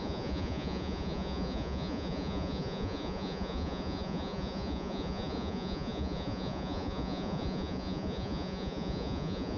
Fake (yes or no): yes